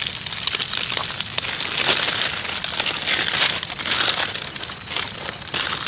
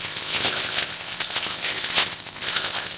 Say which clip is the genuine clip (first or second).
first